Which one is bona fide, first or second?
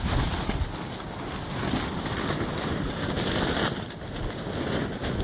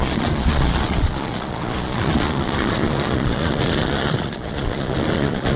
first